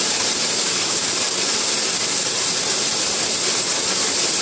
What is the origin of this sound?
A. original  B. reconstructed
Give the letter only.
A